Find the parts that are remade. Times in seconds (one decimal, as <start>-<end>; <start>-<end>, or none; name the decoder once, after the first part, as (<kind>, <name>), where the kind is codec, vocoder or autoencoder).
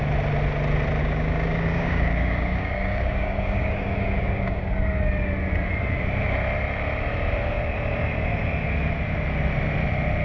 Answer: 1.0-4.6 (codec, DAC)